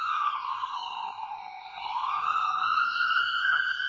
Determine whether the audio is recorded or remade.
remade